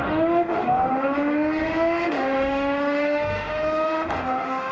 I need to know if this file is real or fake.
fake